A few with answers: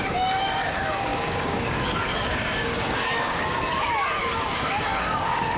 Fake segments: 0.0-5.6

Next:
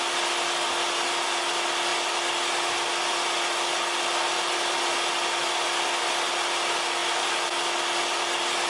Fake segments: none

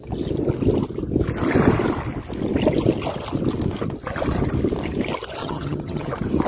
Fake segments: 5.4-6.1

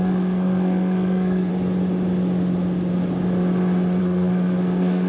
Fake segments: 0.0-1.5; 4.0-5.1

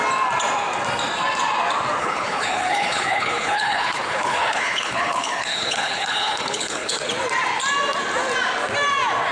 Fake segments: 2.0-7.0